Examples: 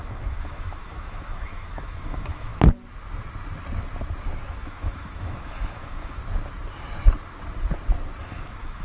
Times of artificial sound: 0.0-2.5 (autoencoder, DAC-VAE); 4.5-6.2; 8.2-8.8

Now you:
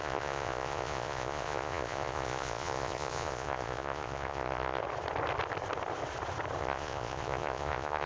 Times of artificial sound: 0.0-4.8 (vocoder, Vocos); 6.6-8.1

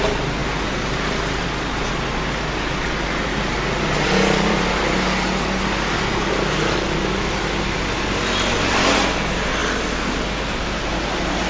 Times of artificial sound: none

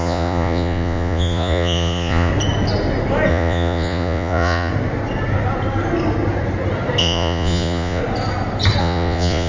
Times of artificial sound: 0.0-2.3 (vocoder, Vocos); 3.3-4.7; 7.0-8.0; 8.8-9.5

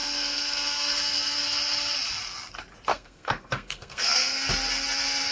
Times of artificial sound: 0.0-1.4 (codec, SNAC); 2.9-4.5

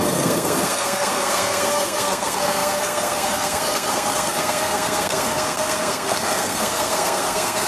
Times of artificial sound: 0.0-7.7 (codec, SNAC)

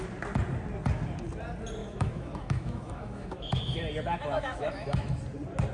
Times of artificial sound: 1.8-3.8 (autoencoder, DAC-VAE); 4.2-5.2